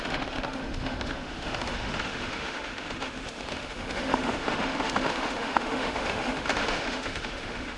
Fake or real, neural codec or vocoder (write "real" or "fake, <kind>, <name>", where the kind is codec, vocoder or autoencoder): fake, autoencoder, DAC-VAE